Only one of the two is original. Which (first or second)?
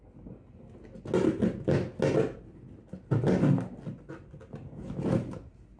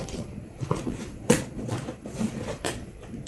first